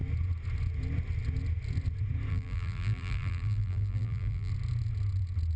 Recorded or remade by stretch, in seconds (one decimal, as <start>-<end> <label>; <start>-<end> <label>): 0.0-2.3 recorded; 2.3-4.5 remade; 4.5-5.6 recorded